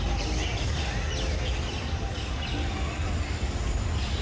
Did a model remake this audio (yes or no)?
no